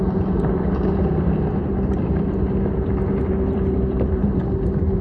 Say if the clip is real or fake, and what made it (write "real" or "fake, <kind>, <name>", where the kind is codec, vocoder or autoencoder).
fake, vocoder, BigVGAN v2